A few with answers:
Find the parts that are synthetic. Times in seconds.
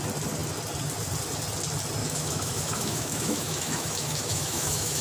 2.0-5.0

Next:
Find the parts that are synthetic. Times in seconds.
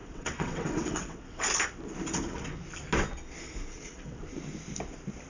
0.0-1.4; 3.7-4.2